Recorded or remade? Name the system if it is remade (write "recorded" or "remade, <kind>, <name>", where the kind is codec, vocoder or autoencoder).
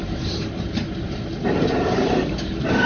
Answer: remade, vocoder, BigVGAN v2